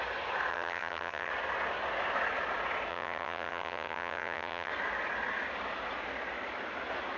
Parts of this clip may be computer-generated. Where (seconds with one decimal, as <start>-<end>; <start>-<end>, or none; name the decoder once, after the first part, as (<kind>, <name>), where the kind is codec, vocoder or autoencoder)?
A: 0.5-1.3 (vocoder, HiFi-GAN); 2.9-4.7